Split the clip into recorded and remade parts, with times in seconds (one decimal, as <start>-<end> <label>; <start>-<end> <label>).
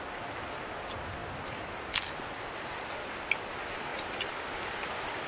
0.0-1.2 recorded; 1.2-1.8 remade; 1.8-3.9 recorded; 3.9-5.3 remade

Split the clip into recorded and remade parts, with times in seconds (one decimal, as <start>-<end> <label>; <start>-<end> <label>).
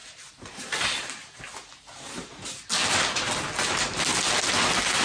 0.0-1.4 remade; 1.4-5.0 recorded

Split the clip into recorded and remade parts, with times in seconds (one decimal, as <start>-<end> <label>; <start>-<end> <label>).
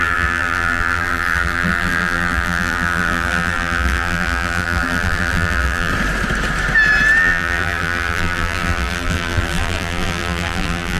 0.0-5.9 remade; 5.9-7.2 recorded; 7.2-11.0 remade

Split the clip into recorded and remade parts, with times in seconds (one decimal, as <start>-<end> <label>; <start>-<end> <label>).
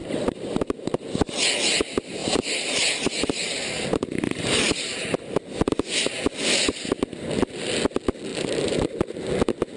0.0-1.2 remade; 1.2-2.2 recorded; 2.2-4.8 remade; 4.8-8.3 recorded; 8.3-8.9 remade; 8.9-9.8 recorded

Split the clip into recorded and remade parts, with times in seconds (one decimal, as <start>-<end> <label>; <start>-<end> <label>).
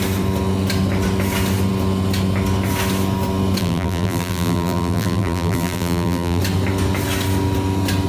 0.0-3.6 recorded; 3.6-6.4 remade; 6.4-8.1 recorded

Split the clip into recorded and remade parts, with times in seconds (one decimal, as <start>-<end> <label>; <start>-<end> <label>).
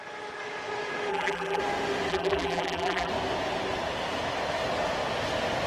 0.0-1.1 recorded; 1.1-1.6 remade; 1.6-2.1 recorded; 2.1-3.1 remade; 3.1-5.7 recorded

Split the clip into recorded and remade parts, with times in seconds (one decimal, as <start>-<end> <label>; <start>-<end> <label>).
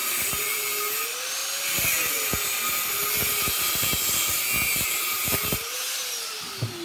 0.0-0.6 remade; 0.6-4.7 recorded; 4.7-6.0 remade; 6.0-6.8 recorded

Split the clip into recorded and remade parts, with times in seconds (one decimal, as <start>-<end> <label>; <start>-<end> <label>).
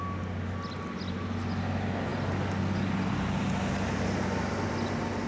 0.0-5.3 recorded